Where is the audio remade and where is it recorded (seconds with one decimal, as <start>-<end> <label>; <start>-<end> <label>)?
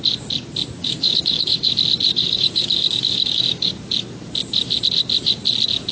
0.0-0.8 recorded; 0.8-1.7 remade; 1.7-2.1 recorded; 2.1-3.7 remade; 3.7-5.9 recorded